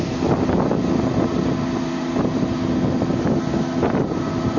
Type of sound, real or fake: real